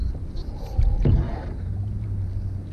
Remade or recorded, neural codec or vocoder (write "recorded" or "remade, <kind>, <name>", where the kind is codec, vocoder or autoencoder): recorded